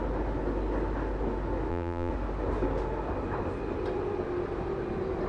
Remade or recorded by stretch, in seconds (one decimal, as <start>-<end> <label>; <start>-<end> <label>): 0.0-1.7 recorded; 1.7-2.1 remade; 2.1-5.3 recorded